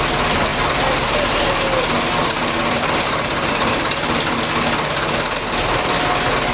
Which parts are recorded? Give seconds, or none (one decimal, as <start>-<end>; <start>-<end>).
0.0-0.5; 1.4-2.2; 4.4-6.5